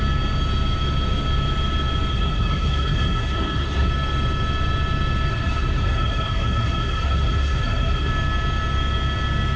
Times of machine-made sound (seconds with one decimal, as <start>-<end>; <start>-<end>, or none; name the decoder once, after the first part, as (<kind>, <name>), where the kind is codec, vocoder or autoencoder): 2.1-3.9 (codec, SNAC); 5.3-8.1